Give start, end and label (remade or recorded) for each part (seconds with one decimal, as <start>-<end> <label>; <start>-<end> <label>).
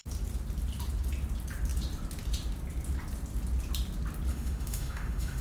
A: 0.0-4.3 recorded; 4.3-5.4 remade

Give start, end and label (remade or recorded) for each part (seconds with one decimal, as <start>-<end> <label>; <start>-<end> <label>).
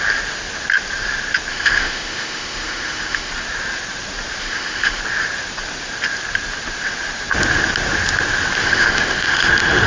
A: 0.0-1.5 recorded; 1.5-3.3 remade; 3.3-4.4 recorded; 4.4-5.0 remade; 5.0-8.6 recorded; 8.6-9.5 remade; 9.5-9.9 recorded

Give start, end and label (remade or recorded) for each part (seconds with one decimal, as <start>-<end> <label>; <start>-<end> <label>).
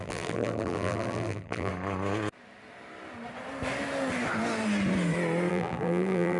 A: 0.0-1.7 remade; 1.7-5.5 recorded; 5.5-6.4 remade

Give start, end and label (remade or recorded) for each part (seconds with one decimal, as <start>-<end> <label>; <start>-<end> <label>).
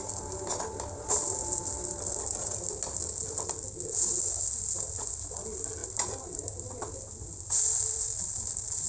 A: 0.0-8.9 recorded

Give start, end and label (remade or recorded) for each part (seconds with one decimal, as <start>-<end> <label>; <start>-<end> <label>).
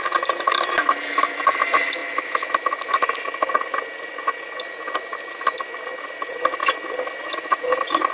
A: 0.0-2.0 remade; 2.0-5.8 recorded; 5.8-6.6 remade; 6.6-7.2 recorded; 7.2-8.1 remade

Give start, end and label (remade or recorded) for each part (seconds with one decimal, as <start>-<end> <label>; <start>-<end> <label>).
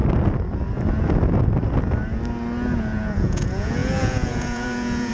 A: 0.0-2.8 recorded; 2.8-5.1 remade